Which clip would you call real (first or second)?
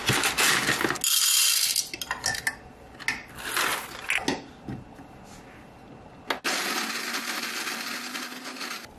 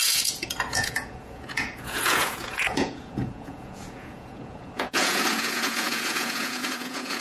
first